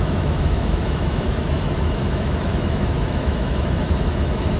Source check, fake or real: fake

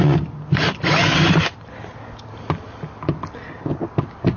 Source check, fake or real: real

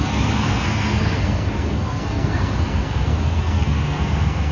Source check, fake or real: fake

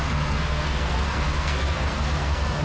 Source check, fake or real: fake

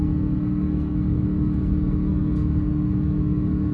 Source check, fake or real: fake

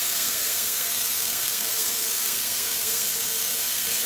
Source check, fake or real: fake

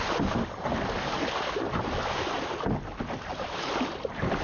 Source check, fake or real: real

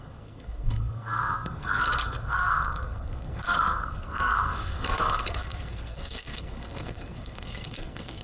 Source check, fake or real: fake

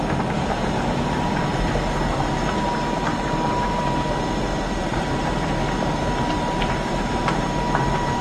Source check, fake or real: fake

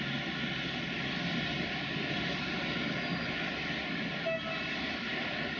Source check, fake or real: real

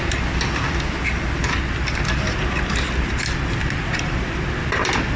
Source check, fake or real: real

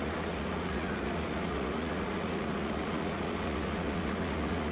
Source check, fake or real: fake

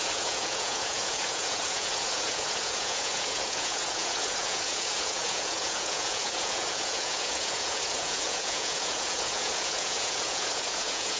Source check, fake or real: fake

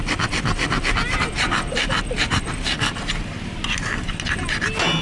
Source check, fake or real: real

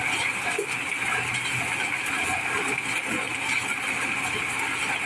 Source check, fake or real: real